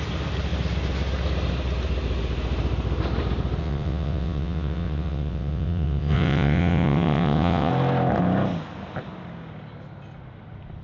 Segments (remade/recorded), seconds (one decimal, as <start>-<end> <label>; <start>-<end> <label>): 0.0-3.6 recorded; 3.6-7.7 remade; 7.7-10.8 recorded

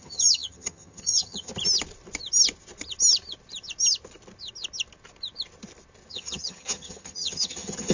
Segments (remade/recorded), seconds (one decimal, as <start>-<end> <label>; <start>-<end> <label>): 0.0-1.5 remade; 1.5-6.1 recorded; 6.1-7.9 remade

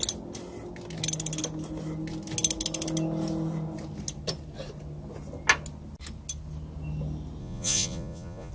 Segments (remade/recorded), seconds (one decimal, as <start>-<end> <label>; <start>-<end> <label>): 0.0-7.4 recorded; 7.4-8.5 remade

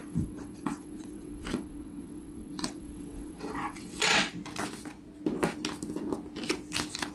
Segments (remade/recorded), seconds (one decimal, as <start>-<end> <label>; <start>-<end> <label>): 0.0-4.3 remade; 4.3-7.1 recorded

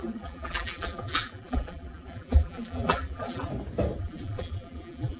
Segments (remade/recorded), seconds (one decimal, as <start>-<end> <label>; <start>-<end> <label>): 0.0-3.5 remade; 3.5-4.0 recorded; 4.0-5.2 remade

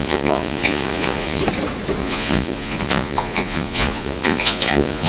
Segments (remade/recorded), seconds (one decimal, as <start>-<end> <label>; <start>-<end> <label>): 0.0-1.4 remade; 1.4-2.0 recorded; 2.0-5.1 remade

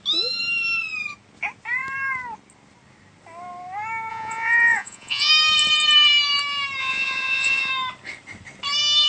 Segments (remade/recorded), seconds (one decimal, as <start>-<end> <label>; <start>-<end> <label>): 0.0-4.1 recorded; 4.1-5.3 remade; 5.3-6.8 recorded; 6.8-7.7 remade; 7.7-9.1 recorded